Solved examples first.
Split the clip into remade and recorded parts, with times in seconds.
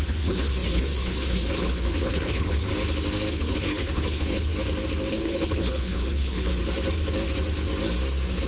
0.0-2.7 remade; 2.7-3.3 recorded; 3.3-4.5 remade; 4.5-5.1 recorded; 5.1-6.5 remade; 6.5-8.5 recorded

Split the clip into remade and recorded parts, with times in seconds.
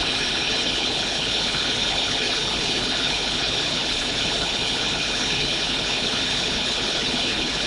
0.0-7.7 remade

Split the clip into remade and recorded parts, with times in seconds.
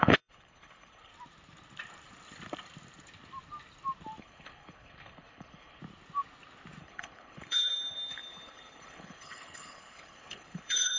0.0-1.1 remade; 1.1-4.2 recorded; 4.2-5.8 remade; 5.8-6.8 recorded; 6.8-11.0 remade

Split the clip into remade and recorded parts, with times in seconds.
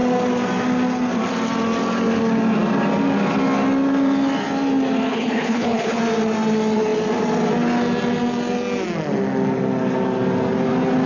0.0-5.1 recorded; 5.1-6.0 remade; 6.0-11.1 recorded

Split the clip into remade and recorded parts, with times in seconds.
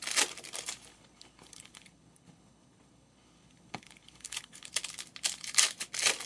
0.0-0.9 recorded; 0.9-4.7 remade; 4.7-6.3 recorded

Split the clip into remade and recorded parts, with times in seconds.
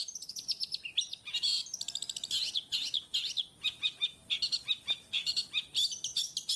0.0-6.6 recorded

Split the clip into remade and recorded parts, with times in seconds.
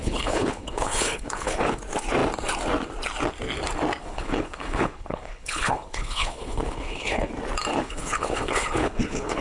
0.0-1.8 remade; 1.8-4.0 recorded; 4.0-7.3 remade; 7.3-7.7 recorded; 7.7-9.4 remade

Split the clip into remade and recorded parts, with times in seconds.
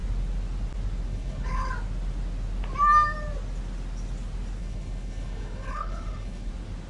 0.0-1.1 recorded; 1.1-1.7 remade; 1.7-4.6 recorded; 4.6-6.5 remade; 6.5-6.9 recorded